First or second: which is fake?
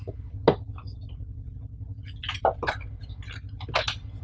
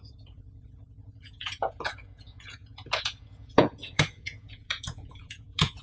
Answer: second